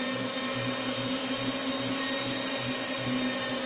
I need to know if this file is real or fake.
real